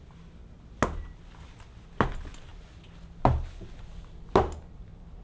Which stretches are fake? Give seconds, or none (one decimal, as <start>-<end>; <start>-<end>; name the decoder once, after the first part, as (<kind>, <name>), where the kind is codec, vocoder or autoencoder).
none